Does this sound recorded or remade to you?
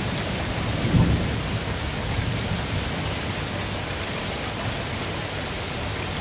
recorded